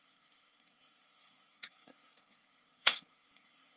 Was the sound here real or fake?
fake